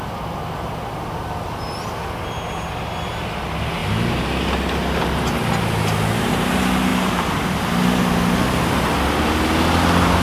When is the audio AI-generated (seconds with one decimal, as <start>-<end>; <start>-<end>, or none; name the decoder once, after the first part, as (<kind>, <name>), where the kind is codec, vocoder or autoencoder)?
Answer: none